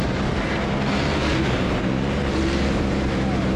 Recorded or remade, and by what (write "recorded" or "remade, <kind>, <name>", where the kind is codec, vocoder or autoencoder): remade, vocoder, BigVGAN v2